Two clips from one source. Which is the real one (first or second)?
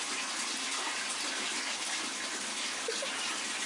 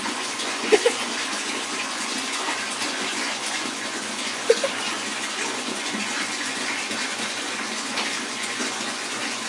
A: first